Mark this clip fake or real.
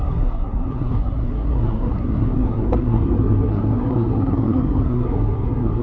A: fake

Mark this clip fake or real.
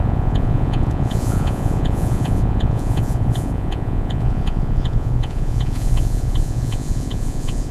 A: fake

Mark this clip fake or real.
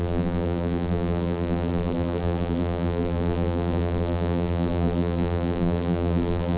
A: fake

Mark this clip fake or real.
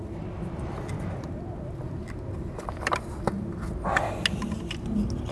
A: real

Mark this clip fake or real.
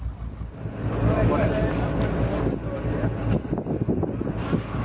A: real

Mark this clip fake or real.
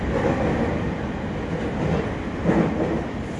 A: real